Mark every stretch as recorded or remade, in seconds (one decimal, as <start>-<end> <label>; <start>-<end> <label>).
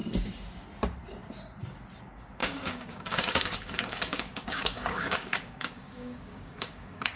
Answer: 0.0-2.0 recorded; 2.0-7.2 remade